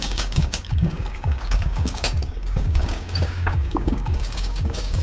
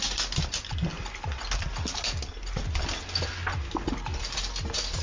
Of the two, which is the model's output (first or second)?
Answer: first